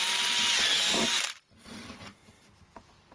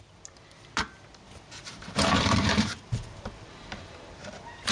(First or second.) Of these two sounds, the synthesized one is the second